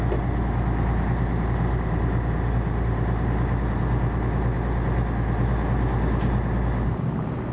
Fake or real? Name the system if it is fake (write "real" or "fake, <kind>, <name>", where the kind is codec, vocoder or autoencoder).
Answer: real